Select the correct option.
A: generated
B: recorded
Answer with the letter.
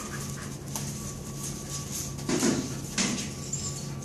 B